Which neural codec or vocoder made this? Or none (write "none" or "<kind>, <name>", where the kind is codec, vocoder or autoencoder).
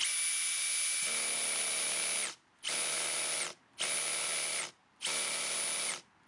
none